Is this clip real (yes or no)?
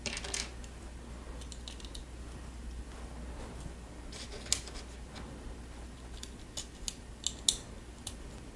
yes